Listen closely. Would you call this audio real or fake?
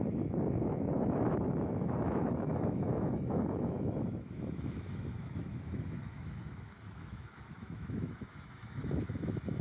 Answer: fake